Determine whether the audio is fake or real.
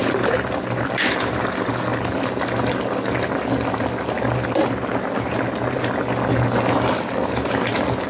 real